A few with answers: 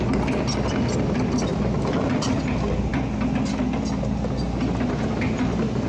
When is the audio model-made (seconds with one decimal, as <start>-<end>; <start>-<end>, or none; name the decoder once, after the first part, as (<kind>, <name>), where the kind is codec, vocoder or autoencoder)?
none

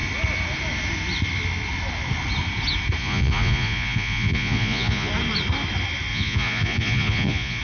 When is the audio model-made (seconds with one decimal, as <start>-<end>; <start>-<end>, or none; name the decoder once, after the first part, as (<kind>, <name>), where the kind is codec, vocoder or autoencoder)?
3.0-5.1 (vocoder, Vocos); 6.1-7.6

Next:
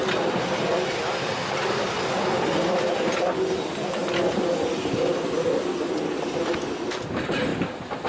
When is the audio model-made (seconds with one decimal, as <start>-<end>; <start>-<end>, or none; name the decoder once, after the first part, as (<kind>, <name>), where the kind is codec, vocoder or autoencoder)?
none